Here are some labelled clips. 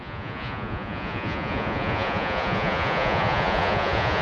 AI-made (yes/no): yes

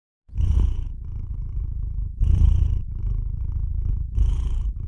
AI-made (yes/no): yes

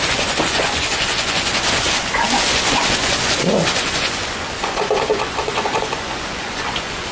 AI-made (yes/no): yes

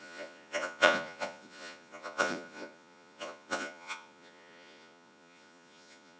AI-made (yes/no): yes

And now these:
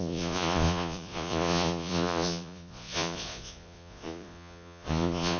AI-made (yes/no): yes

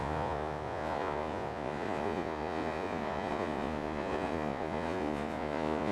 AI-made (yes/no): yes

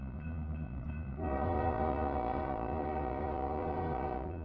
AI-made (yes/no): yes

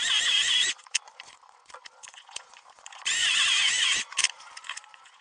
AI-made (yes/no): yes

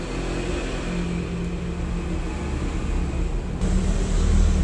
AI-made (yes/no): no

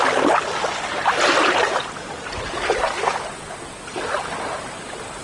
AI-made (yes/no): no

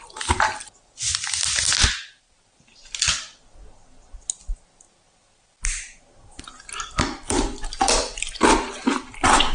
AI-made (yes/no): no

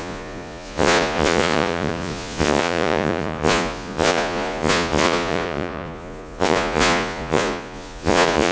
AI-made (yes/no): yes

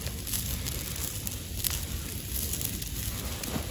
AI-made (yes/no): no